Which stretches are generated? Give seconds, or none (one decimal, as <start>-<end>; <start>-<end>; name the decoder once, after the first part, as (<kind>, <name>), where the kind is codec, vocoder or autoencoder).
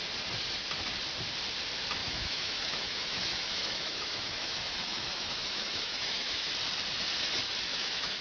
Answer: 2.0-6.5 (autoencoder, DAC-VAE); 7.7-8.2